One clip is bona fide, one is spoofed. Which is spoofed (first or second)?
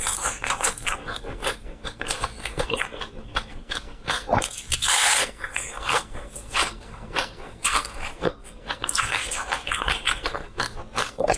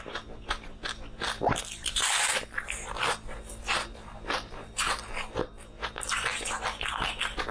first